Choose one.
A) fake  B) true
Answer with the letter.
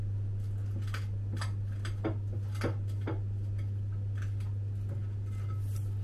B